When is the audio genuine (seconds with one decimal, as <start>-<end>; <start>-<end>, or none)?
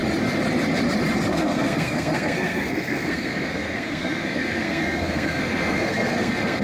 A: 0.0-1.3